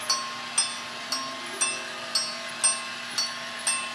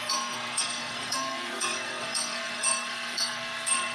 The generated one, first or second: second